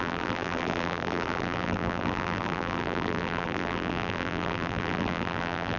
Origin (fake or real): fake